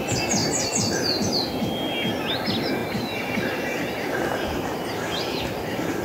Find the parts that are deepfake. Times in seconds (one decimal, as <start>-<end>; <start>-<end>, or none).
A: 0.4-1.5